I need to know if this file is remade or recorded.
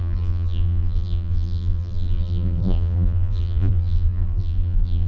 remade